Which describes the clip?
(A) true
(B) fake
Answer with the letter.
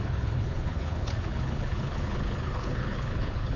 B